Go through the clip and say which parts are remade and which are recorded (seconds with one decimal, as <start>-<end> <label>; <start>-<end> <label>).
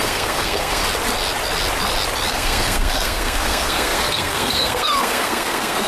0.0-0.8 remade; 0.8-2.3 recorded; 2.3-5.9 remade